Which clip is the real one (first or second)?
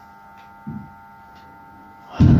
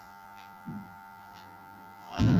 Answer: first